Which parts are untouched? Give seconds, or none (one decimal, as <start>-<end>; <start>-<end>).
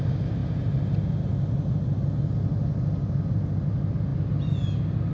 0.0-5.1